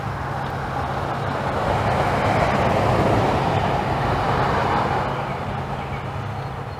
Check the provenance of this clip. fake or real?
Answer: real